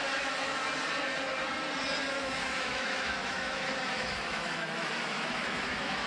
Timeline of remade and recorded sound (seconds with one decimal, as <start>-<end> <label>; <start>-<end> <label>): 0.0-0.6 remade; 0.6-2.1 recorded; 2.1-6.1 remade